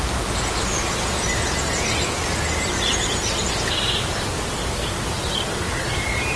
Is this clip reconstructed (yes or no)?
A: no